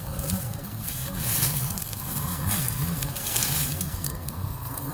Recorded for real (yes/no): no